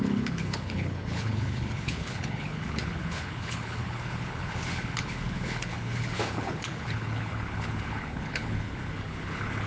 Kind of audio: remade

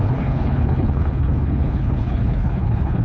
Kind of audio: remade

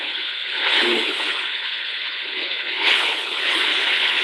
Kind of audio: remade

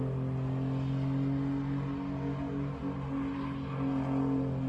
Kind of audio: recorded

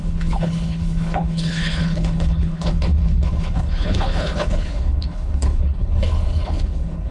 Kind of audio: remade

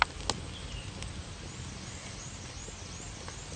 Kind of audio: recorded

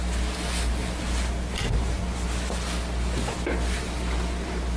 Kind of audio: recorded